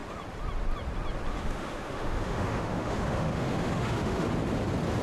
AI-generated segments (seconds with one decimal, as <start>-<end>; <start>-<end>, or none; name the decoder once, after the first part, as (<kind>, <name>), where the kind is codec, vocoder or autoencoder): 1.3-4.3 (autoencoder, DAC-VAE)